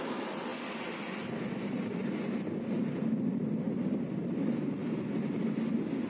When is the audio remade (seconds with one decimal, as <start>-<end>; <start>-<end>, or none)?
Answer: none